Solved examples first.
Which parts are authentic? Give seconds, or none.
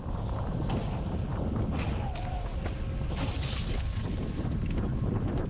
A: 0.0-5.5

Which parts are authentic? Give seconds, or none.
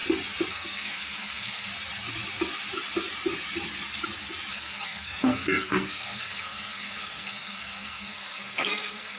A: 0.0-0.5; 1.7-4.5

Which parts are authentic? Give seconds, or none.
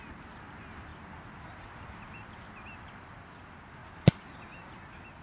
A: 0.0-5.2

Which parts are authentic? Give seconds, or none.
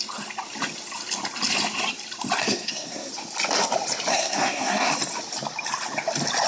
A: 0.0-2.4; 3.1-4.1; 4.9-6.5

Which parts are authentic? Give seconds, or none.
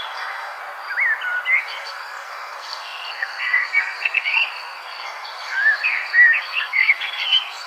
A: 0.6-1.6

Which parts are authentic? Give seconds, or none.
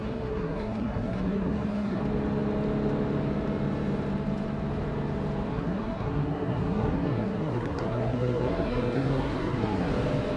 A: 2.0-5.5; 9.9-10.4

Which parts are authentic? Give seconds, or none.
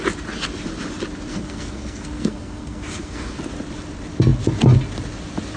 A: 0.0-1.3; 3.4-5.6